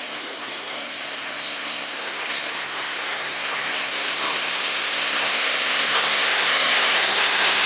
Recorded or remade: remade